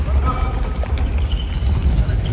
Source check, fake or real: real